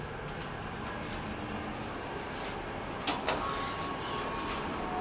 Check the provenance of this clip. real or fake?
real